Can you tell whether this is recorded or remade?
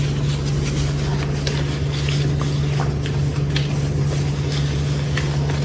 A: recorded